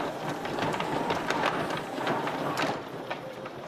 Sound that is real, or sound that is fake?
fake